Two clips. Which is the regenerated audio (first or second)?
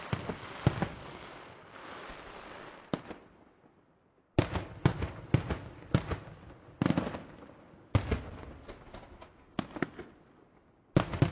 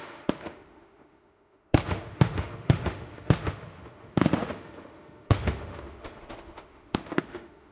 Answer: second